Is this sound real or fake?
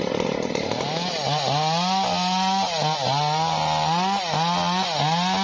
real